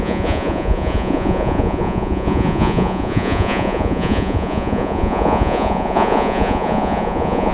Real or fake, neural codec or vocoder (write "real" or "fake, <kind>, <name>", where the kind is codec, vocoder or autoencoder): fake, vocoder, Vocos